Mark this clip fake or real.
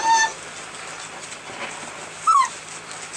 real